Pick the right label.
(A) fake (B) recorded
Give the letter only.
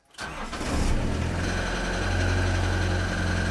B